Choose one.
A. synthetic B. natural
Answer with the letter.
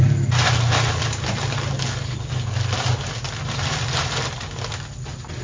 B